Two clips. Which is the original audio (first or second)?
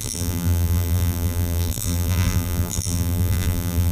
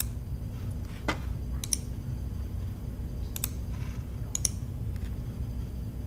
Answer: second